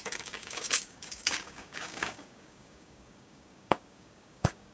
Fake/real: fake